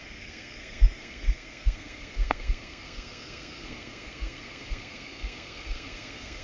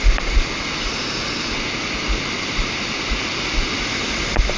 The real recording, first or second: second